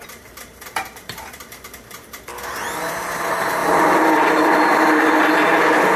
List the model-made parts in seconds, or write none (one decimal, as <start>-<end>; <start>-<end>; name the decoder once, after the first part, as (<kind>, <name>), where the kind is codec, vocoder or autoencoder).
0.0-2.3 (vocoder, BigVGAN v2); 2.9-3.6; 4.2-6.0